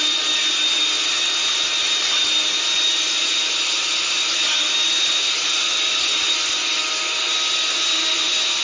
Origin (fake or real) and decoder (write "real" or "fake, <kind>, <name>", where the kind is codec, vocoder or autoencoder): real